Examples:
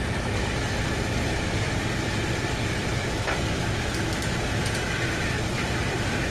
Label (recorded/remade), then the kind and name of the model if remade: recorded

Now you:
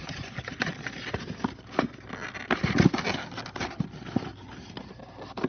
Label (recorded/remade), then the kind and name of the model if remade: recorded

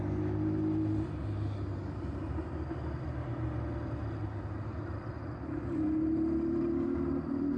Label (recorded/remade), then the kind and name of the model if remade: recorded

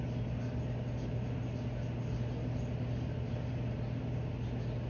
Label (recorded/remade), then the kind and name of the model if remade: recorded